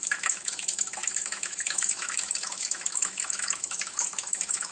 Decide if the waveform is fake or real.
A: fake